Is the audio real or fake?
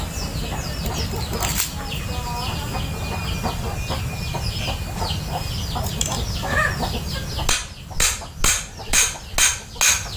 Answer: real